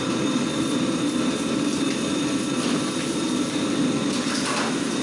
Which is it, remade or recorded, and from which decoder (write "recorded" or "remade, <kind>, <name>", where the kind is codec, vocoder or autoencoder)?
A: recorded